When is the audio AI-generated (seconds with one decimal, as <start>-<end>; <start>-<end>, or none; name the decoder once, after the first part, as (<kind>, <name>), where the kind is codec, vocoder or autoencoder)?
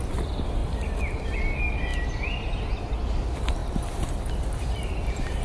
none